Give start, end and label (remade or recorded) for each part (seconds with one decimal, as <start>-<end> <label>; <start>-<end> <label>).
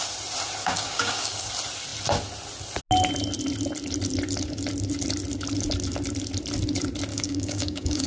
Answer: 0.0-0.6 recorded; 0.6-1.5 remade; 1.5-7.1 recorded; 7.1-8.1 remade